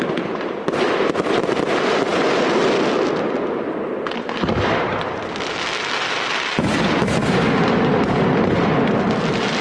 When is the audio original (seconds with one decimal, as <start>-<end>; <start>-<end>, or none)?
0.0-9.6